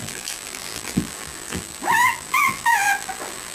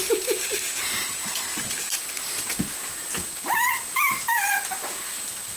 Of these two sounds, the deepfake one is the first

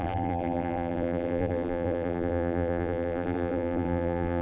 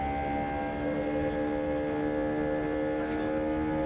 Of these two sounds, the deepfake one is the first